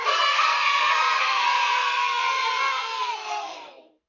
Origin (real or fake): fake